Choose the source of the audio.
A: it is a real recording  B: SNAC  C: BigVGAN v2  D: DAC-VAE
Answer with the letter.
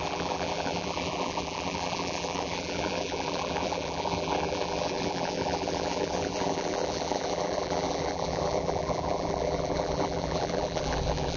C